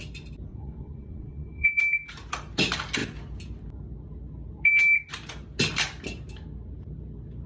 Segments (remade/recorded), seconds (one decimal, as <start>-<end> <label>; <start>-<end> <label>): 0.0-0.5 recorded; 0.5-1.8 remade; 1.8-7.5 recorded